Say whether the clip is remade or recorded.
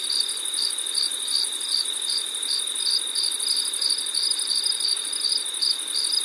remade